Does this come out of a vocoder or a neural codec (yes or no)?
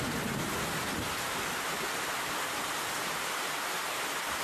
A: no